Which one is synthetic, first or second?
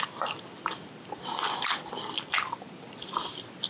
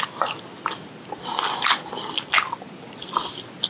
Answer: first